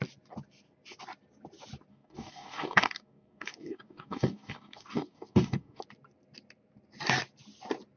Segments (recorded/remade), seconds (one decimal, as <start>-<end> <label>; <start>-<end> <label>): 0.0-1.9 recorded; 1.9-5.8 remade; 5.8-8.0 recorded